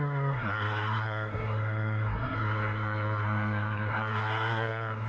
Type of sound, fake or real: fake